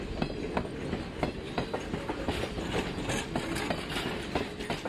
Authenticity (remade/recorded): recorded